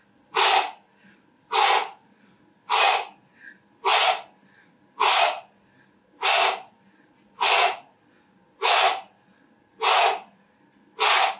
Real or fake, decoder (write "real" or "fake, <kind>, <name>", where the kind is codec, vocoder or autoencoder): real